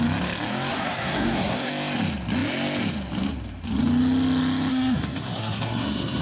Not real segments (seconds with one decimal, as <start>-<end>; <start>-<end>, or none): 0.7-1.7; 4.7-6.2